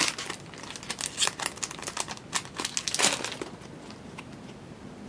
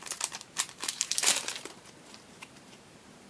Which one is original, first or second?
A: first